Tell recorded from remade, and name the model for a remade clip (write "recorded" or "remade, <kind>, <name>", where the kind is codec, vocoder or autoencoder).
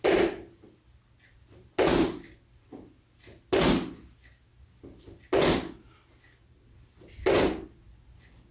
recorded